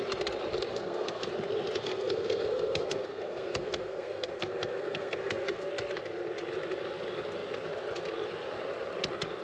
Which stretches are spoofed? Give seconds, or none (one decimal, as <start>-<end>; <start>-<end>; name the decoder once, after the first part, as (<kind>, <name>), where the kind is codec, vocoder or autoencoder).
0.7-1.3 (codec, SNAC); 1.8-5.7